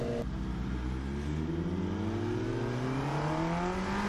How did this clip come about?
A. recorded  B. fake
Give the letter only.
A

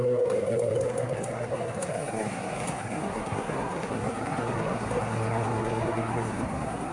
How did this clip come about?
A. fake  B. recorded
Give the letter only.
A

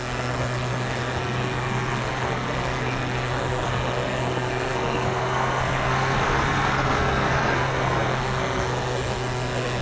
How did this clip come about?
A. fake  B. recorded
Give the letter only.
A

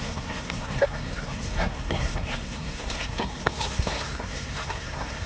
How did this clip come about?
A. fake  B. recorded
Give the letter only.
A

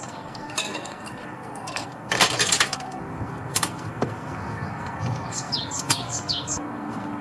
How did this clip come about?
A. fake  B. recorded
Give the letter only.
A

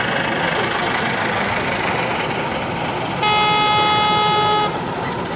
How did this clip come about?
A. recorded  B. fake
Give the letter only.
A